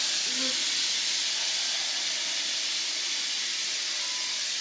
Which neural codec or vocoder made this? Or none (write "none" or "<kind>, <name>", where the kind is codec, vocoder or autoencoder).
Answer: none